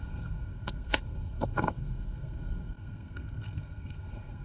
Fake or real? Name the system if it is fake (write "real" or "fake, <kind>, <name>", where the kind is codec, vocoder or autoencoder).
fake, codec, SNAC